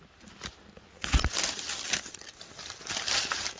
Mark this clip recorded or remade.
recorded